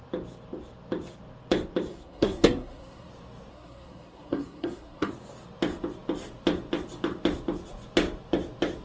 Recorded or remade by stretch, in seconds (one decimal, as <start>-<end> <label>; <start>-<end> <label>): 0.0-1.9 recorded; 1.9-3.1 remade; 3.1-3.5 recorded; 3.5-5.1 remade; 5.1-8.8 recorded